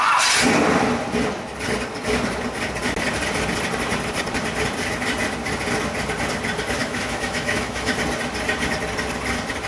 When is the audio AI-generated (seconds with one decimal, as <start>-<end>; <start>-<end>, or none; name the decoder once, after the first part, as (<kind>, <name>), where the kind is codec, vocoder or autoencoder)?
6.8-7.9 (autoencoder, DAC-VAE)